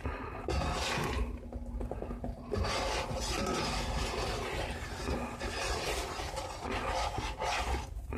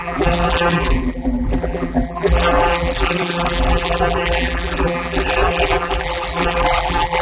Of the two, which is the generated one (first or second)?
second